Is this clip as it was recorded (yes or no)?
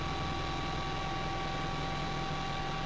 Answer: yes